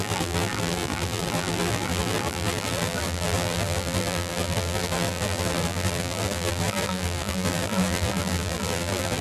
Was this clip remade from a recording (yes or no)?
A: yes